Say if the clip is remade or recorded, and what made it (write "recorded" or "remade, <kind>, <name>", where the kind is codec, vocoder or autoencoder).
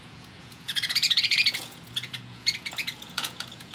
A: remade, vocoder, Vocos